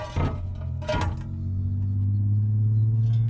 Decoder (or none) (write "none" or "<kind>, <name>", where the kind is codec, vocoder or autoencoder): none